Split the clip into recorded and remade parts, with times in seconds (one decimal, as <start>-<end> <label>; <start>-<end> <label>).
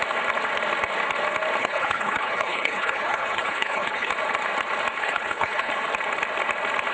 0.0-1.6 recorded; 1.6-4.1 remade; 4.1-5.0 recorded; 5.0-5.7 remade; 5.7-6.9 recorded